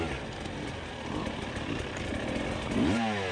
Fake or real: real